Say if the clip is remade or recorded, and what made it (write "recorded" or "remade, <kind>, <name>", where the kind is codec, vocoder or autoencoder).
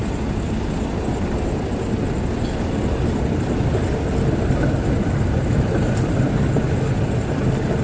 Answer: recorded